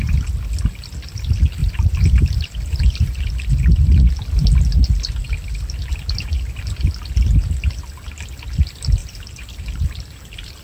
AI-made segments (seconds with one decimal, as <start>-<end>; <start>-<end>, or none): 1.6-3.3; 9.0-10.2